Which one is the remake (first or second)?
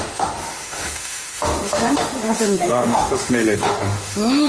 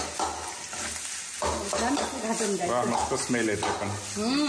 first